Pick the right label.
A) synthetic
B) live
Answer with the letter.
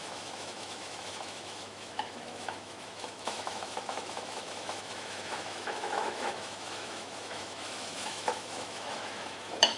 A